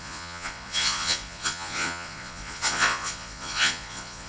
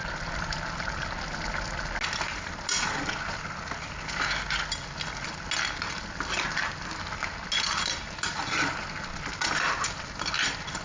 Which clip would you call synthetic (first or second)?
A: first